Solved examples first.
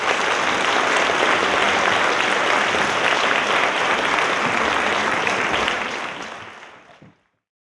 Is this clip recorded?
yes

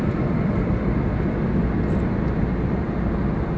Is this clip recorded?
yes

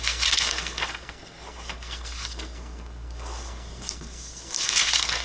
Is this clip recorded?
no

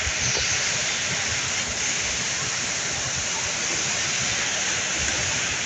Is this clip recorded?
yes